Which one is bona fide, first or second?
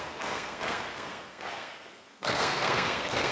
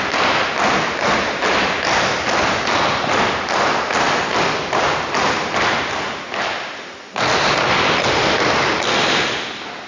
second